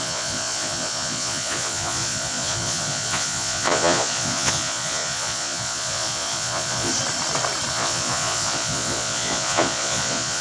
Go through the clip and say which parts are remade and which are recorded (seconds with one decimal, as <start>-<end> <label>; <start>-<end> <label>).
0.0-6.9 remade; 6.9-7.7 recorded; 7.7-10.4 remade